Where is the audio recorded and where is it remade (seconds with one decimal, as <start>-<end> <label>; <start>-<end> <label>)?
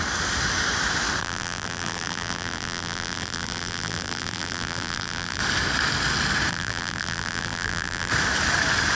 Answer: 0.0-1.2 recorded; 1.2-5.4 remade; 5.4-6.5 recorded; 6.5-8.1 remade; 8.1-8.9 recorded